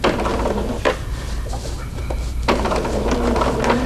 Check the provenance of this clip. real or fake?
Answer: real